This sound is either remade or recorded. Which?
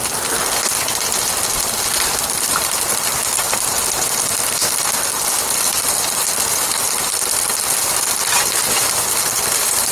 recorded